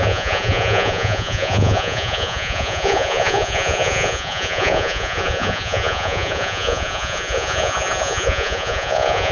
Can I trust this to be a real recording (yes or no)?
no